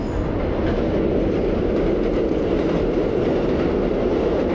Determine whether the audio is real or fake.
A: real